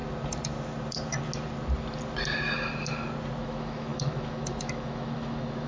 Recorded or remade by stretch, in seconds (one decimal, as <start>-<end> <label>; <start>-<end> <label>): 0.0-3.4 recorded; 3.4-5.7 remade